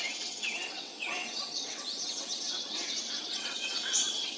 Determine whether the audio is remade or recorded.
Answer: remade